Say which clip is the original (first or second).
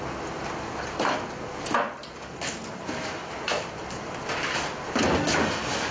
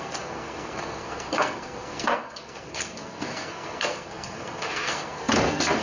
first